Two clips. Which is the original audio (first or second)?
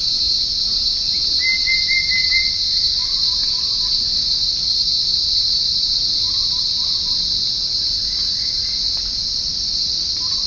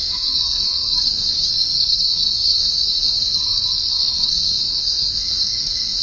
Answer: first